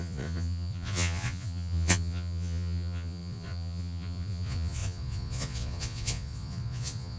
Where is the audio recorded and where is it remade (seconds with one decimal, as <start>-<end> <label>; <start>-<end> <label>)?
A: 0.0-7.2 remade